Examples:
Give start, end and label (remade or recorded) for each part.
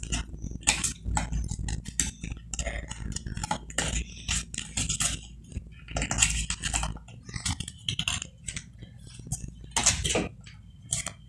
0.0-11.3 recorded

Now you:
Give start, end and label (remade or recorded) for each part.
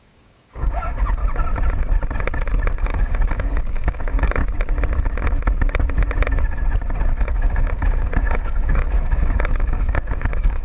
0.0-1.2 remade; 1.2-2.8 recorded; 2.8-4.4 remade; 4.4-7.2 recorded; 7.2-10.6 remade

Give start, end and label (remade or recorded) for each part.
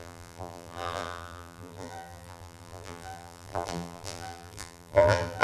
0.0-5.4 remade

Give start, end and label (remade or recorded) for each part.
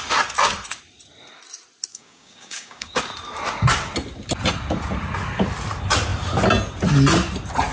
0.0-1.9 recorded; 1.9-3.0 remade; 3.0-7.7 recorded